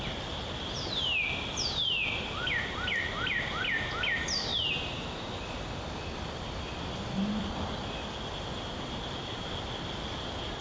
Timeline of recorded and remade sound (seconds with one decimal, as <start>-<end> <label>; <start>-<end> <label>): 0.0-10.6 recorded